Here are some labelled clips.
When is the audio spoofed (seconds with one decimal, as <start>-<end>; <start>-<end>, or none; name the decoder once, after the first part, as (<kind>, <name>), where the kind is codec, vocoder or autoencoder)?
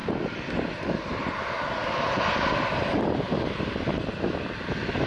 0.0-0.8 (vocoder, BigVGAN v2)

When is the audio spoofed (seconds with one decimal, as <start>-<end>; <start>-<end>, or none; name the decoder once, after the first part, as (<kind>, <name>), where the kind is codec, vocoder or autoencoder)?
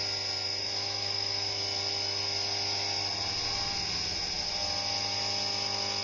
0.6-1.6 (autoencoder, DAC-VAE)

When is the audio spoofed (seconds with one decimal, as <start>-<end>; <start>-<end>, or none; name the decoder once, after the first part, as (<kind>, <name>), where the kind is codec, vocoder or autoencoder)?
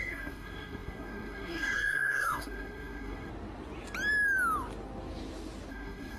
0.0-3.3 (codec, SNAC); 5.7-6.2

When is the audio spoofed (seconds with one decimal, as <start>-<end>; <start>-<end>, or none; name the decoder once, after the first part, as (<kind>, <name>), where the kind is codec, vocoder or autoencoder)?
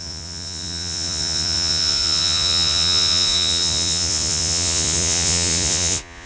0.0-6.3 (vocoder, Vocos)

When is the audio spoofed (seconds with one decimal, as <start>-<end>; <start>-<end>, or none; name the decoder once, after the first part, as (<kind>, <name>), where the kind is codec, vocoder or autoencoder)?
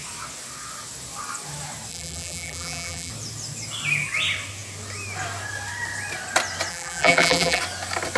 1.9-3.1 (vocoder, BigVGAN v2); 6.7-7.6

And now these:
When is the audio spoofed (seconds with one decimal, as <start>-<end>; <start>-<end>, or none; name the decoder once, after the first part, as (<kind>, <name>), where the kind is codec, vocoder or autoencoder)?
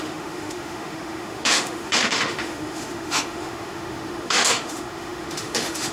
0.0-5.9 (autoencoder, DAC-VAE)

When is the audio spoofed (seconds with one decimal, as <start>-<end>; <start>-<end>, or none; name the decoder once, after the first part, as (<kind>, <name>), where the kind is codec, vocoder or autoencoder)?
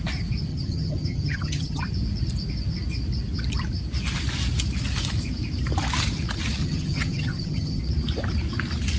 0.5-1.8 (vocoder, HiFi-GAN); 6.6-7.8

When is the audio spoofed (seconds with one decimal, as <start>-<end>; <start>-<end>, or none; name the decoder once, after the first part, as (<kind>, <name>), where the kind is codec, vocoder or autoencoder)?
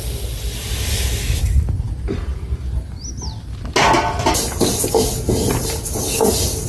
none